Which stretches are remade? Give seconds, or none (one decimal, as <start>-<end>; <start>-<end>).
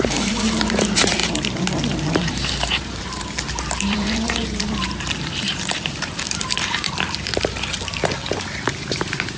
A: 0.0-1.2; 2.1-7.3; 8.8-9.4